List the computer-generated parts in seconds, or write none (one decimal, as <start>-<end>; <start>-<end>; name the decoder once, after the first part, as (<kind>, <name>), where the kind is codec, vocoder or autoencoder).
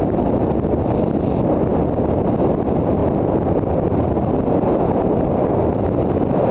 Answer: none